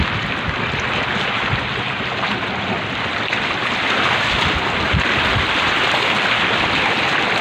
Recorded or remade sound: recorded